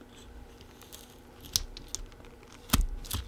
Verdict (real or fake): real